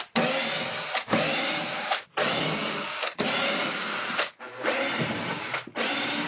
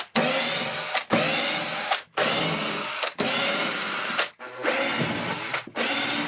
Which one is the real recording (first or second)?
second